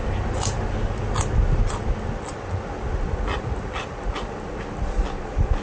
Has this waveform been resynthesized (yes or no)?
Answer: no